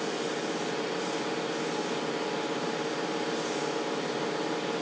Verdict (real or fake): real